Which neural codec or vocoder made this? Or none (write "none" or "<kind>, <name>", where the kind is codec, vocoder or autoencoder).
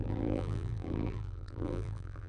vocoder, BigVGAN v2